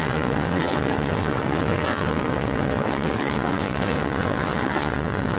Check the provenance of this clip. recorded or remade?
remade